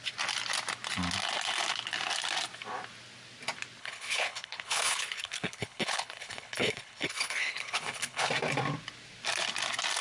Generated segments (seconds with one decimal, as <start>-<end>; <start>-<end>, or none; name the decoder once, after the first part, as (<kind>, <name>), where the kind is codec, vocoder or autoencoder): 3.8-8.3 (codec, HILCodec)